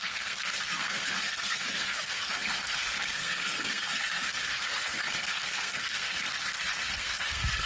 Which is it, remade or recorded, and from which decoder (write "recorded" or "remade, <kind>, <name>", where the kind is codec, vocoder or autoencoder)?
remade, codec, SNAC